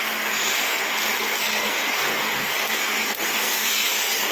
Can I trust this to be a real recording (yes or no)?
no